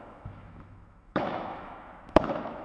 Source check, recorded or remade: remade